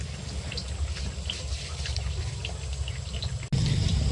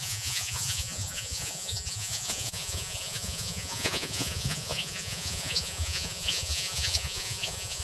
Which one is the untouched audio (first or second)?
first